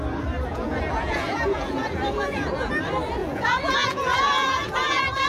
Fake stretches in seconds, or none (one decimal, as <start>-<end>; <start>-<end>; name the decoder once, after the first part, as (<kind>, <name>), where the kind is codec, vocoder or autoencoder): 0.5-2.7 (vocoder, Vocos); 3.2-5.3